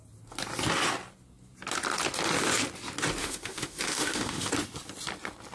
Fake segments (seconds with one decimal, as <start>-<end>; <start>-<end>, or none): 3.2-4.5